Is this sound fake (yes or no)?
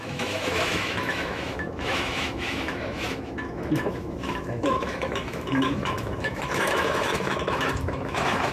yes